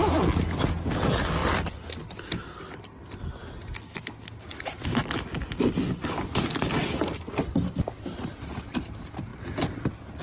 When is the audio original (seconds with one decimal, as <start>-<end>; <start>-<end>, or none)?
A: 0.0-1.4; 4.1-9.3